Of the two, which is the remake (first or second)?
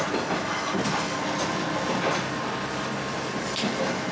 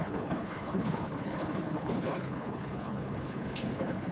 second